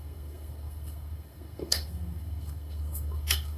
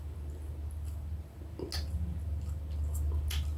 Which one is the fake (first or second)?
first